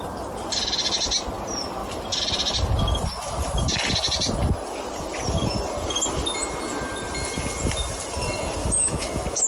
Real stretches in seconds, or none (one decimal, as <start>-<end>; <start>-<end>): 0.0-8.6